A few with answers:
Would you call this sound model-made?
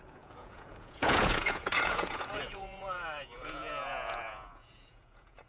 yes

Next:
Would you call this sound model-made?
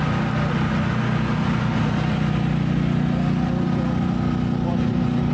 no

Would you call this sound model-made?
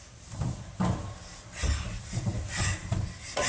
no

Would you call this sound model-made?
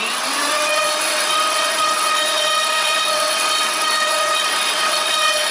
yes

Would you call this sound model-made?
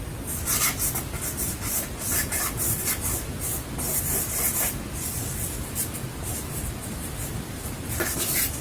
no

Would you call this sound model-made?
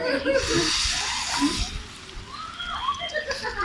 no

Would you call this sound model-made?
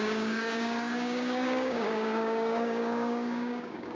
yes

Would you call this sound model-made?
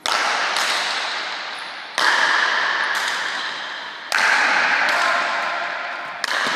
no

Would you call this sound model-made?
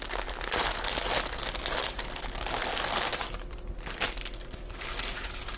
no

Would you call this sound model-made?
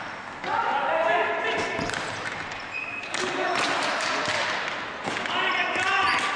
no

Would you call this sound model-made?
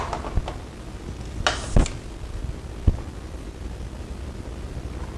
no